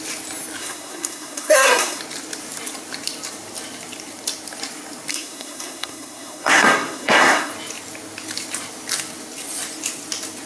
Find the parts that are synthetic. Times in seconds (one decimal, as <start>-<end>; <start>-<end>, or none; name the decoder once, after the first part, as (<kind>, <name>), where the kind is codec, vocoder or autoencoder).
0.6-2.0 (codec, SNAC); 5.1-7.5